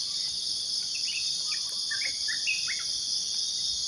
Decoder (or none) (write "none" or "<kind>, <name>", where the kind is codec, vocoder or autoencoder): none